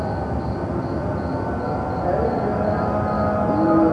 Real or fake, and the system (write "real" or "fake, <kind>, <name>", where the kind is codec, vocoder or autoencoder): real